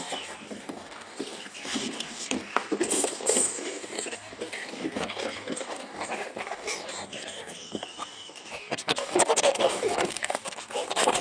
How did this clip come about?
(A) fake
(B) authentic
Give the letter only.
A